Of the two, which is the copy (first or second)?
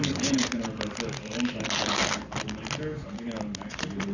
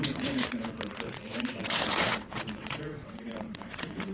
second